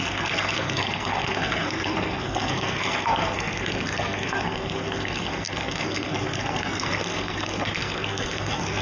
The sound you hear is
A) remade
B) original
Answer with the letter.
A